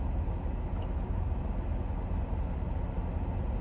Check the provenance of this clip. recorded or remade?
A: recorded